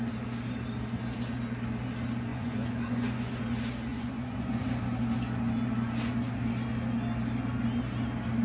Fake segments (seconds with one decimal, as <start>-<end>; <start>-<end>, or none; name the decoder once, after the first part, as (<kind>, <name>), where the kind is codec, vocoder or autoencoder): 2.3-3.4 (vocoder, Vocos); 3.9-4.6